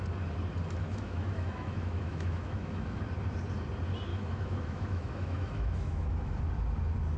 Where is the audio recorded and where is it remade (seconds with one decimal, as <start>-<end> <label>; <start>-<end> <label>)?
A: 0.0-0.8 recorded; 0.8-3.0 remade; 3.0-4.1 recorded; 4.1-6.4 remade; 6.4-7.2 recorded